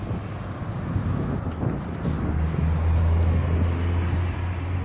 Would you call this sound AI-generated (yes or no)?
no